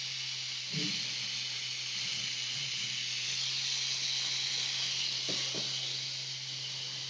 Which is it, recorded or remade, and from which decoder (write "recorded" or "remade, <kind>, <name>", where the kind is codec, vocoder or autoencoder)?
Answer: recorded